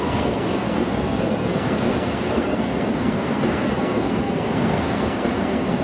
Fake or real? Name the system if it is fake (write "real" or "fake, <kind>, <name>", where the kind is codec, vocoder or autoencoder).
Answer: fake, codec, SNAC